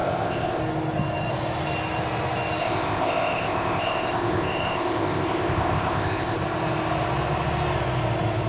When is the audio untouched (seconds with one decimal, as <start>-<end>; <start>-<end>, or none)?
0.6-2.6; 6.4-8.5